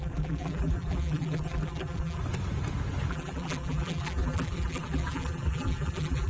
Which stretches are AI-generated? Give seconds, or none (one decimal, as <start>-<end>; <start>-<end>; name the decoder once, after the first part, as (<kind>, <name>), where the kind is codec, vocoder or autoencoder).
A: 0.0-2.2 (vocoder, BigVGAN v2); 3.1-6.3